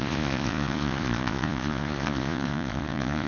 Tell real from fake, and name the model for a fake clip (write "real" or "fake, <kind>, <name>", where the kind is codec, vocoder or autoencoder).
fake, vocoder, Vocos